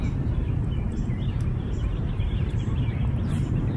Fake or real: fake